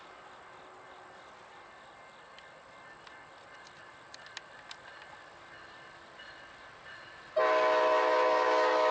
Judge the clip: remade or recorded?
recorded